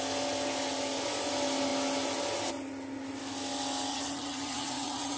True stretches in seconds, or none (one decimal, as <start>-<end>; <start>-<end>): 0.0-3.9